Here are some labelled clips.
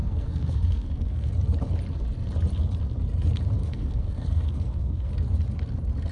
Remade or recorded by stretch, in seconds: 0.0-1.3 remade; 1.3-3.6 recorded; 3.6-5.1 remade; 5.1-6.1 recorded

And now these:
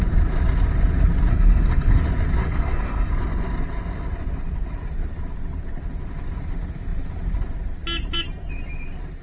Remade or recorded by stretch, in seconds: 0.0-1.3 recorded; 1.3-2.0 remade; 2.0-2.4 recorded; 2.4-3.1 remade; 3.1-9.2 recorded